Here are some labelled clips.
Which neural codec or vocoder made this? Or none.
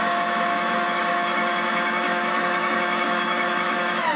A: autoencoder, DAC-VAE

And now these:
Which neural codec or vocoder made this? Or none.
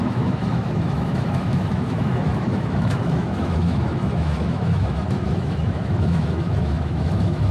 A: autoencoder, DAC-VAE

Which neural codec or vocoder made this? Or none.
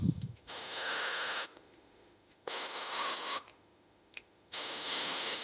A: autoencoder, DAC-VAE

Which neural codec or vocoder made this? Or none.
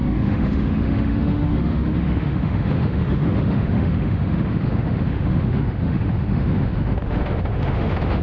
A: autoencoder, DAC-VAE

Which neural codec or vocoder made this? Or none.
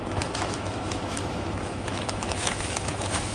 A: autoencoder, DAC-VAE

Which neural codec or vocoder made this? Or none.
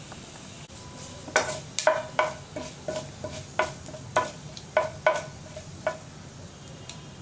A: none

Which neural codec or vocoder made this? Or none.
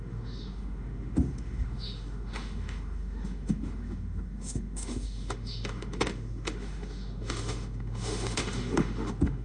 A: autoencoder, DAC-VAE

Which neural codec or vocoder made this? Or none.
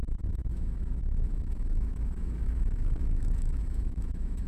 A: autoencoder, DAC-VAE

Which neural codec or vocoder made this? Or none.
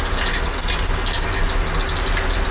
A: none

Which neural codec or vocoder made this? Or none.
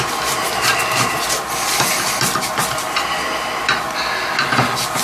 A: none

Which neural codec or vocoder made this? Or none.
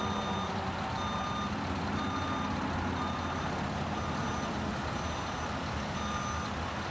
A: none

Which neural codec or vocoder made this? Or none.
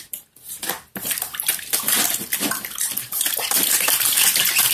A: none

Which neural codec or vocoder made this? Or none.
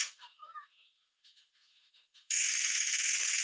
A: autoencoder, DAC-VAE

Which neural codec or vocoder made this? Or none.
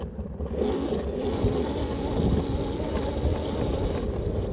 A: none